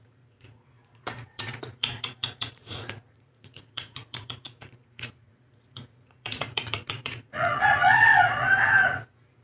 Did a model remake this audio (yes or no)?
yes